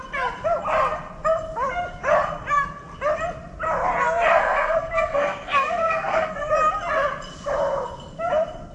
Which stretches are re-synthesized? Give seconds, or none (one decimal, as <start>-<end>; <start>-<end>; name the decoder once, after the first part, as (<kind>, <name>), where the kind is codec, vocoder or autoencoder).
4.4-6.4 (codec, SNAC)